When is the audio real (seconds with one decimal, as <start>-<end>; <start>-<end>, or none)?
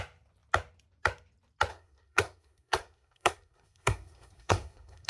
0.0-1.7